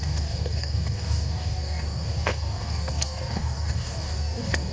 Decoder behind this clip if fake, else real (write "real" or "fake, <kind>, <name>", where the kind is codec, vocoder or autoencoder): fake, codec, DAC